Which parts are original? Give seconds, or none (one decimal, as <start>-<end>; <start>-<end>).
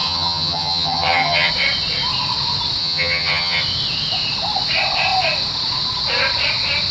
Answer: 1.5-2.8; 3.6-6.9